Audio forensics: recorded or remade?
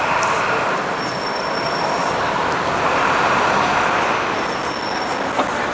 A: recorded